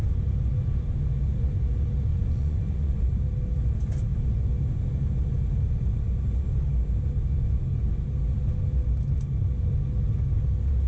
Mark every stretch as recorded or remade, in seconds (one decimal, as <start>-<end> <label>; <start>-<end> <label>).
0.0-2.1 recorded; 2.1-3.0 remade; 3.0-10.9 recorded